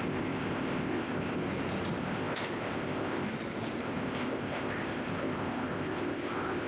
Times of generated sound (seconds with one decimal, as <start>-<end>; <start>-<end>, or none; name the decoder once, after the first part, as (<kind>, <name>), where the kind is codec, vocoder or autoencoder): 0.0-1.4 (codec, ZipCodec); 2.0-3.3; 3.8-6.7